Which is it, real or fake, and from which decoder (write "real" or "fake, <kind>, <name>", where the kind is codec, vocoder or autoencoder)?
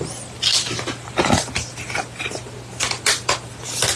real